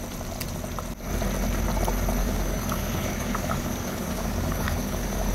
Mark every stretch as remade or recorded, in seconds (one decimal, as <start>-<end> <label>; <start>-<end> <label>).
0.0-2.2 recorded; 2.2-5.3 remade